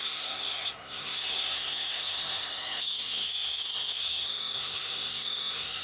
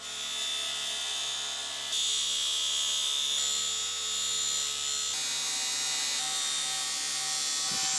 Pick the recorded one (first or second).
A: second